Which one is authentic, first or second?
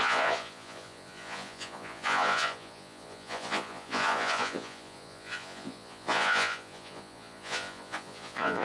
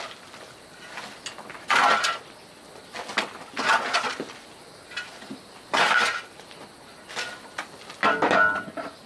second